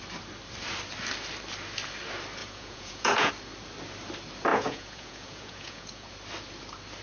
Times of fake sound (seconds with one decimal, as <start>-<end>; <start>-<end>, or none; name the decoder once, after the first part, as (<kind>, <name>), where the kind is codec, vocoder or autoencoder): 2.4-3.3 (vocoder, Vocos); 4.5-6.1